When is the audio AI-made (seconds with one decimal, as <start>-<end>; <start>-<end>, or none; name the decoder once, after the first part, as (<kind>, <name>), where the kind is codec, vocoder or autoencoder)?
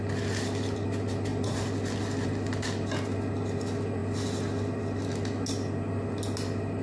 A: none